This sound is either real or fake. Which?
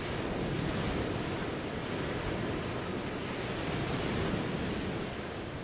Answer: real